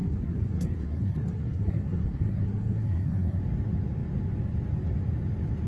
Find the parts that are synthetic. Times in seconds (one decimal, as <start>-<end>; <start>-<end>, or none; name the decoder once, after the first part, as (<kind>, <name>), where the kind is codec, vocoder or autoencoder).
0.0-3.4 (codec, SNAC)